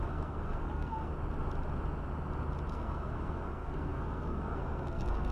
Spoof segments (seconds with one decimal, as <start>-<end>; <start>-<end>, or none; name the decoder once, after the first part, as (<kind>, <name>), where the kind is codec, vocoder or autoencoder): 0.0-1.1 (codec, SNAC); 2.7-5.3